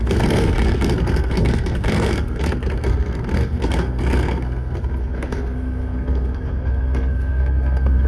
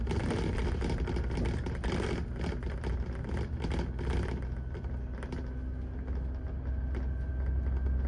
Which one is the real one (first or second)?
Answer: second